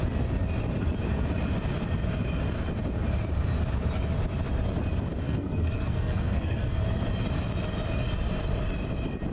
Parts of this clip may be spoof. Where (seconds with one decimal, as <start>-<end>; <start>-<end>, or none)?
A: 5.2-6.8